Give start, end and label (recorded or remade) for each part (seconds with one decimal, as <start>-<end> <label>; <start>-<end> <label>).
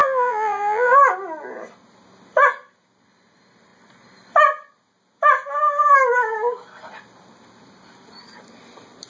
0.0-0.9 remade; 0.9-9.1 recorded